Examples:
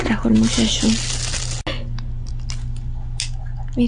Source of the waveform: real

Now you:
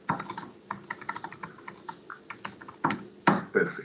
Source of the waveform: real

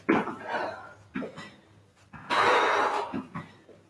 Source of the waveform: real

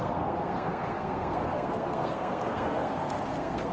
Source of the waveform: fake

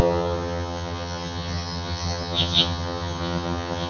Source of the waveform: fake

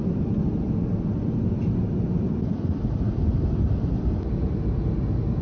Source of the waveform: real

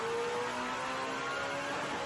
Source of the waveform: real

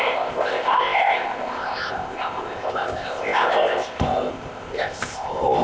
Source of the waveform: fake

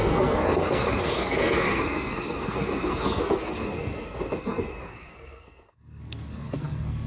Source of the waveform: fake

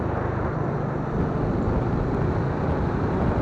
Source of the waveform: real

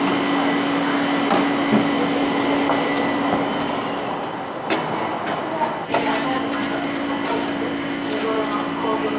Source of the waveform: real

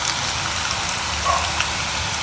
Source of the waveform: real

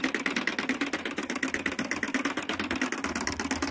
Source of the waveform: real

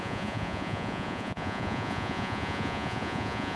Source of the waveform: fake